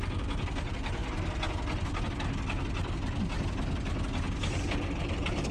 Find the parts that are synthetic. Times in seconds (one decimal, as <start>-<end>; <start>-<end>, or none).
none